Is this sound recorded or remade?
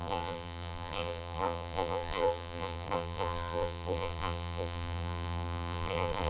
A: remade